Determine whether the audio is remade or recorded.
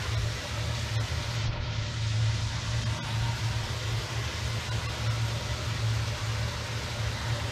recorded